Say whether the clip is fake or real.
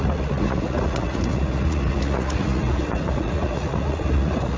fake